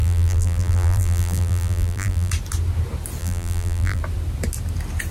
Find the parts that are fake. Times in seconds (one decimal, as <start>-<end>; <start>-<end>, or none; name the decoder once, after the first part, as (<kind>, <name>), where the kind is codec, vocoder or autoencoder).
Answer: 0.0-2.3 (vocoder, BigVGAN v2); 3.2-4.0